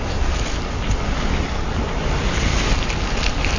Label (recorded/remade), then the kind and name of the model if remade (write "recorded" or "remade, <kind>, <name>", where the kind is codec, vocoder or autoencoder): recorded